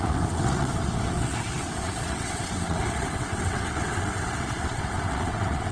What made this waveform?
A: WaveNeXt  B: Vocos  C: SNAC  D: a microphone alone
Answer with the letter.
A